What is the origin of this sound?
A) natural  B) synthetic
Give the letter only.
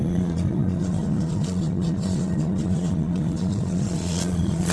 B